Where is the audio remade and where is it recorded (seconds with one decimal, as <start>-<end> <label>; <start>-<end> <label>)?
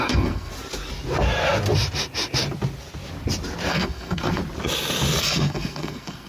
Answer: 0.0-0.5 remade; 0.5-3.7 recorded; 3.7-4.4 remade; 4.4-5.2 recorded; 5.2-6.3 remade